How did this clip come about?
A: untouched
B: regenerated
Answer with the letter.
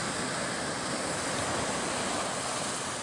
A